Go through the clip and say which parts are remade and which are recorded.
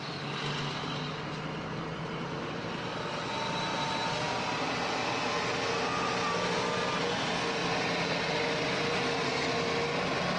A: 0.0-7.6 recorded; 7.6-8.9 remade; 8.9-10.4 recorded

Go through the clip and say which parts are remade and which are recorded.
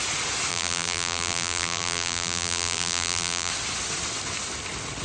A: 0.0-0.5 recorded; 0.5-3.5 remade; 3.5-5.0 recorded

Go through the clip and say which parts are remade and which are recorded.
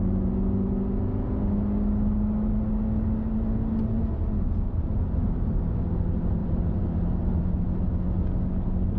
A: 0.0-6.4 recorded; 6.4-7.4 remade; 7.4-9.0 recorded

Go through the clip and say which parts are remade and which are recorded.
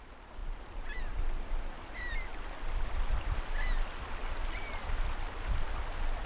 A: 0.0-0.4 recorded; 0.4-1.0 remade; 1.0-6.3 recorded